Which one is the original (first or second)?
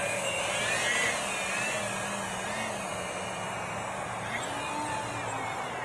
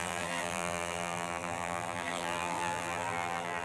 first